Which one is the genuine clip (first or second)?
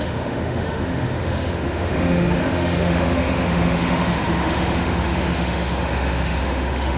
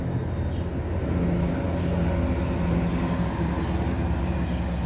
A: second